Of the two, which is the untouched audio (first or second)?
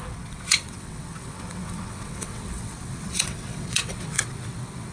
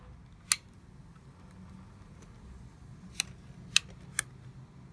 second